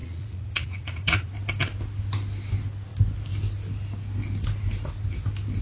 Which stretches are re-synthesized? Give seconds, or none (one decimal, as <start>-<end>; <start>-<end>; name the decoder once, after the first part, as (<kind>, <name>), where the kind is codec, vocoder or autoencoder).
0.0-1.3 (vocoder, Vocos)